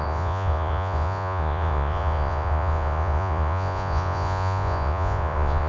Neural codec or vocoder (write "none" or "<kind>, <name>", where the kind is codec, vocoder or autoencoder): vocoder, Vocos